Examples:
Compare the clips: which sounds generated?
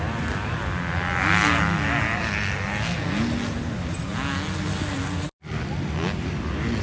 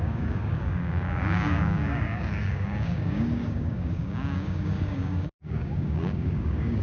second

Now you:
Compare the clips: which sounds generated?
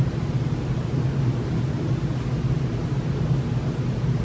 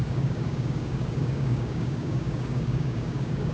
second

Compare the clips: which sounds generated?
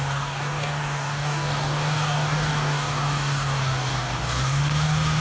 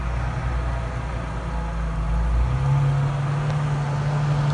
first